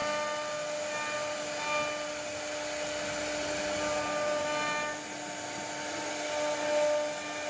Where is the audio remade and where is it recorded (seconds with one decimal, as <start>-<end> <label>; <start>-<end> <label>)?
0.0-7.5 recorded

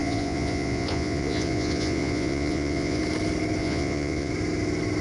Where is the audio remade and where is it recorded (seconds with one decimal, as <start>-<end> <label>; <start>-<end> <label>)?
0.0-3.0 remade; 3.0-3.6 recorded; 3.6-4.3 remade; 4.3-5.0 recorded